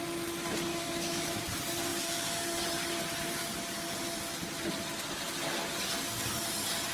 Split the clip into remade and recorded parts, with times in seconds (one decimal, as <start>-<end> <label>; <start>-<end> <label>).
0.0-0.7 recorded; 0.7-1.4 remade; 1.4-6.9 recorded